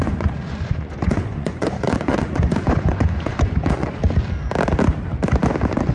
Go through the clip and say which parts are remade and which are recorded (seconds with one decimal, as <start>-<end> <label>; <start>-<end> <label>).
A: 0.0-4.0 remade; 4.0-5.9 recorded